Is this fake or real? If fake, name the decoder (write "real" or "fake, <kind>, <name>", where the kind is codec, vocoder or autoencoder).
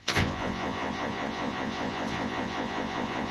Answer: fake, vocoder, Vocos